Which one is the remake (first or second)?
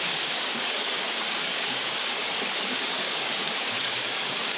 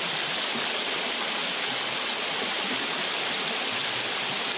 first